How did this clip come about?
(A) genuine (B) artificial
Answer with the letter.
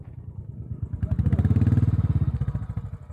A